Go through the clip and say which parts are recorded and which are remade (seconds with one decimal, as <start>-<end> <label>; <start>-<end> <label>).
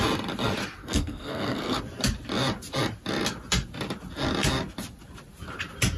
0.0-0.8 recorded; 0.8-1.8 remade; 1.8-6.0 recorded